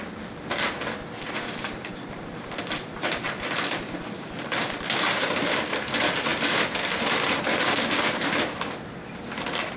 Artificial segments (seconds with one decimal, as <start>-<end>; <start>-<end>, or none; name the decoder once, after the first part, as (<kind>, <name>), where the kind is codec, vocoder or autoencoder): 1.0-5.3 (vocoder, BigVGAN v2)